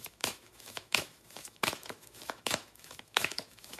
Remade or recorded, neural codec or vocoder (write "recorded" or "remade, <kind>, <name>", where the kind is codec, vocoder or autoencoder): remade, autoencoder, DAC-VAE